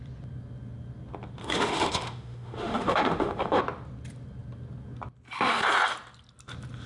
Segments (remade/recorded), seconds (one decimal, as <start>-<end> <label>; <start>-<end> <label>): 0.0-1.4 recorded; 1.4-3.6 remade; 3.6-6.9 recorded